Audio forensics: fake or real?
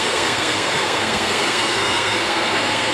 fake